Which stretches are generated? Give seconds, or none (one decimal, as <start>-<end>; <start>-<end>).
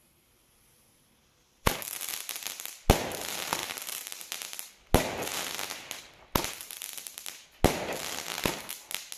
3.6-4.2